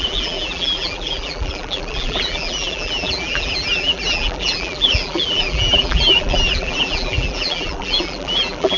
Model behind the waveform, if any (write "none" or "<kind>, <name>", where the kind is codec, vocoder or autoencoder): vocoder, BigVGAN v2